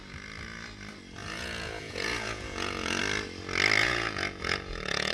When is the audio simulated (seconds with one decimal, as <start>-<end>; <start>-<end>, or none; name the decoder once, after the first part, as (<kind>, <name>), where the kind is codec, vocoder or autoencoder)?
1.2-3.0 (vocoder, Vocos); 3.8-5.1